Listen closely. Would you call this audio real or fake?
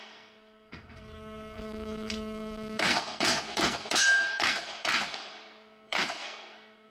fake